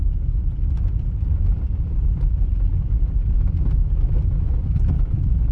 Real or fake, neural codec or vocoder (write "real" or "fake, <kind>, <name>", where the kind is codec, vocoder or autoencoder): fake, vocoder, BigVGAN v2